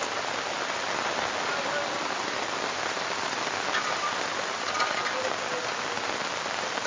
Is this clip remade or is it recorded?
recorded